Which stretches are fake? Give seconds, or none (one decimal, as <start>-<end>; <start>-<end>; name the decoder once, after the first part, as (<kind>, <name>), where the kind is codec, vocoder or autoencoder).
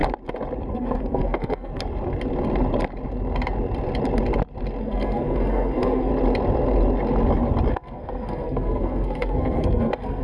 0.7-1.7 (codec, SNAC); 4.8-6.1; 7.7-10.2